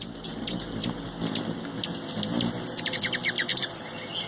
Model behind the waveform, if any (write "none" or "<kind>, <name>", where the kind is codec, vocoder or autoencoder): none